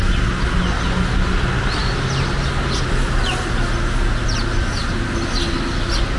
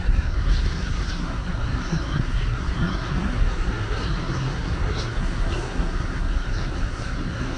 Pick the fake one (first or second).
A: second